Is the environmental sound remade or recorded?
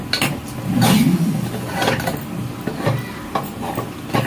recorded